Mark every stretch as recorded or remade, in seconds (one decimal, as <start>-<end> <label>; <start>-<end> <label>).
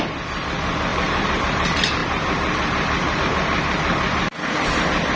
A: 0.0-0.9 recorded; 0.9-1.4 remade; 1.4-5.2 recorded